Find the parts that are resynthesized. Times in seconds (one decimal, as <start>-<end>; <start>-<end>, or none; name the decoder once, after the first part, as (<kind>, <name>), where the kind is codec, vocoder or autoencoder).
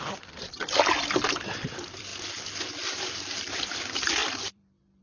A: 0.0-2.1 (vocoder, BigVGAN v2); 3.4-5.0